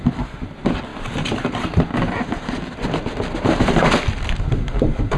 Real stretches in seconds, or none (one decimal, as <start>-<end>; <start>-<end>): 0.0-5.2